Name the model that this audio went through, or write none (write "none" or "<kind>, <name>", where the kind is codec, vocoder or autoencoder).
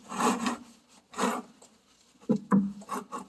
none